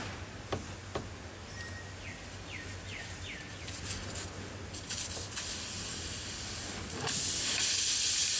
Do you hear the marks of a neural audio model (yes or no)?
no